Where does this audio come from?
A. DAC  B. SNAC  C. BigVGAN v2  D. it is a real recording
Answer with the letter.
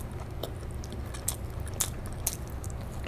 D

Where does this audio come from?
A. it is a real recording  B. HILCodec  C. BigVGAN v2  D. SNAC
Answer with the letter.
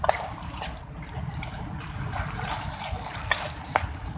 A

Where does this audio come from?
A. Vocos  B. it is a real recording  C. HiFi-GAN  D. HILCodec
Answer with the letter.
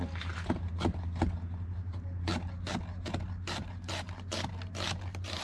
B